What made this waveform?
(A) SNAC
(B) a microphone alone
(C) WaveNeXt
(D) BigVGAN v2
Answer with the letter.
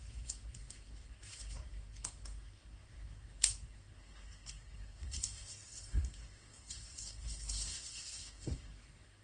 A